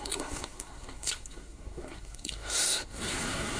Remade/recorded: remade